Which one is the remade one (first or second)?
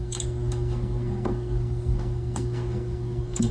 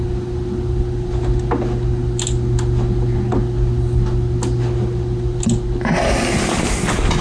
first